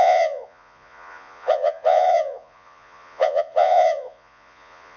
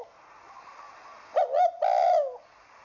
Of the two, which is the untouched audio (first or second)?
second